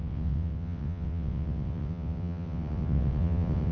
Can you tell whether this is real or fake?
fake